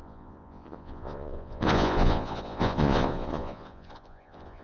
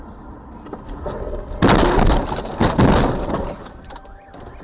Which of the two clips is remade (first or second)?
first